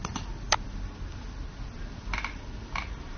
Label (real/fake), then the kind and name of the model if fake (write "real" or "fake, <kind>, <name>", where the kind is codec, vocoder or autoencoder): real